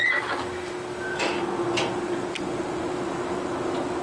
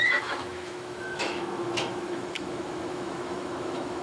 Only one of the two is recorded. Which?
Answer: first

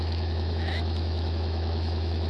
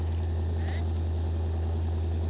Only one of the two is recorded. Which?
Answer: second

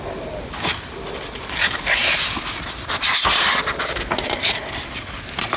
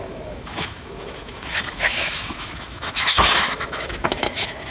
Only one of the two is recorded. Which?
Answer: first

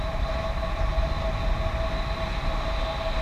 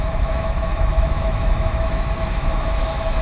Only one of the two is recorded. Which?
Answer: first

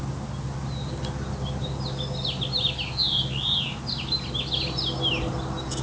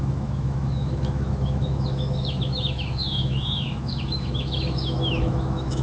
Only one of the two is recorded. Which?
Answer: first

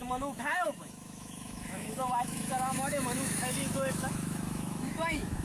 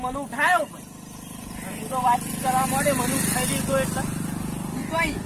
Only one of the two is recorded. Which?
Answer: second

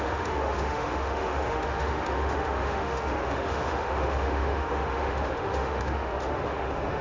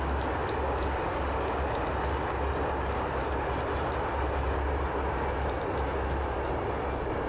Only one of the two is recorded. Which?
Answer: second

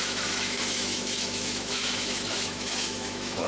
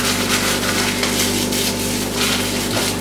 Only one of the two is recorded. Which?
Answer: second